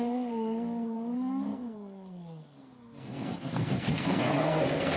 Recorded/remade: remade